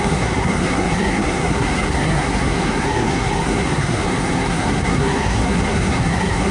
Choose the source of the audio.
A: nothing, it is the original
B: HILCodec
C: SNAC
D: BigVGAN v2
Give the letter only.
C